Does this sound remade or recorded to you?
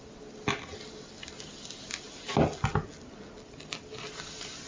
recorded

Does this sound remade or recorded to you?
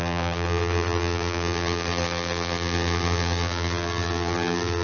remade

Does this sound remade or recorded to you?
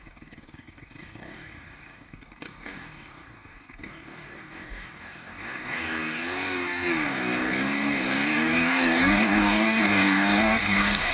remade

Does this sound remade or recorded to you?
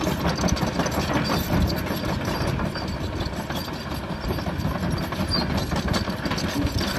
recorded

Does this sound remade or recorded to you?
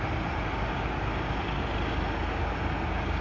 recorded